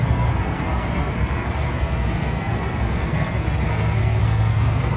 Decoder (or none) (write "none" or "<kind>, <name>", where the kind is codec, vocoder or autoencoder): codec, SNAC